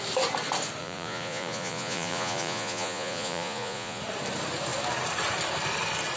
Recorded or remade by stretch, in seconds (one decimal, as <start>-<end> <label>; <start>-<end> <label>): 0.0-0.8 recorded; 0.8-4.0 remade; 4.0-6.2 recorded